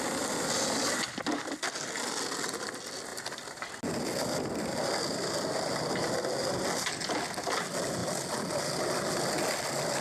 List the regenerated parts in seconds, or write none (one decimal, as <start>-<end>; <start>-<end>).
none